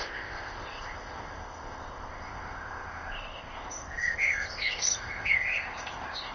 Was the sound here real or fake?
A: fake